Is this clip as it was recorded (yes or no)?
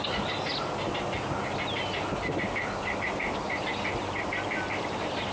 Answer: yes